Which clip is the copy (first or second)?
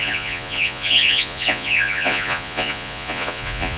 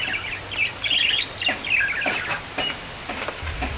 first